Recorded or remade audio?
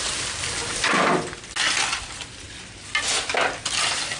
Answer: recorded